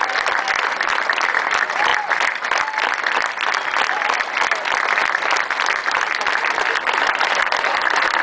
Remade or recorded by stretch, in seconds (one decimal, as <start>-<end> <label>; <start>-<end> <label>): 0.0-8.2 recorded